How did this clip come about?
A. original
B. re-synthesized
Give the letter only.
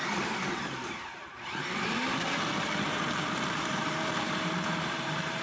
B